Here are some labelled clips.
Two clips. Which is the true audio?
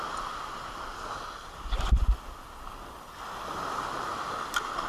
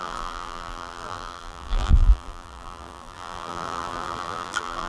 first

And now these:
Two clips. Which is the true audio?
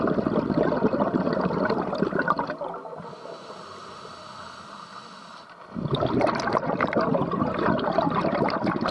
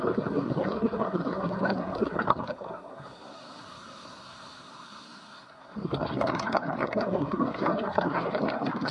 first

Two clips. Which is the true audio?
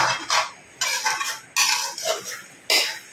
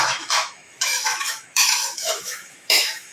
first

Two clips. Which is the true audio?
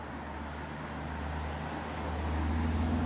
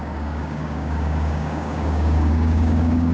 first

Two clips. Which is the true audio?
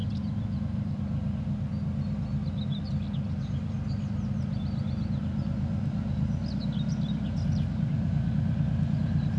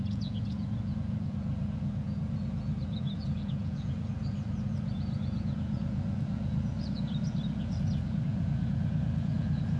first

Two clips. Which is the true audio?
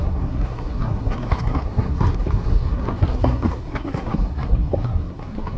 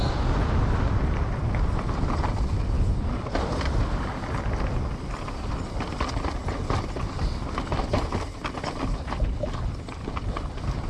second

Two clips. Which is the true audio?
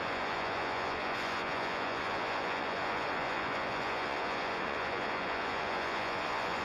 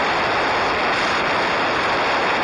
second